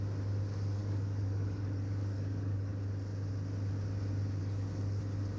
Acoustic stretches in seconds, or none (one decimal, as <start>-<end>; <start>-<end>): 0.0-0.8; 2.7-4.4; 5.0-5.4